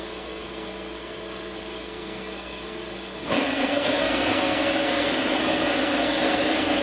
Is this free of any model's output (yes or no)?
no